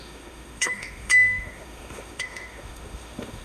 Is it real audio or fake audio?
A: fake